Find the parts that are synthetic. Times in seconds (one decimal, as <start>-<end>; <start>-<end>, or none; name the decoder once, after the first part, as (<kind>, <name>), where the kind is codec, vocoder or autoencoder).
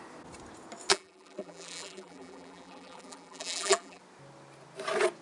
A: 0.9-4.0 (vocoder, BigVGAN v2)